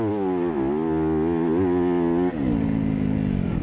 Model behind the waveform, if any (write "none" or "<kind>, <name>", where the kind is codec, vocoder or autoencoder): none